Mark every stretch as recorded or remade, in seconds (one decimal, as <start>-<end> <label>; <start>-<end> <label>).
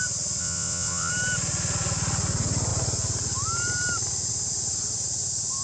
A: 0.0-0.4 recorded; 0.4-1.1 remade; 1.1-5.6 recorded